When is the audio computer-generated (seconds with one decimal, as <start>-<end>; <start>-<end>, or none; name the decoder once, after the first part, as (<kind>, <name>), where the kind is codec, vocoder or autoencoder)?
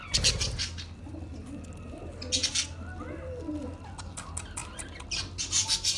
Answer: none